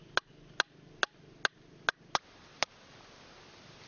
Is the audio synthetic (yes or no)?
no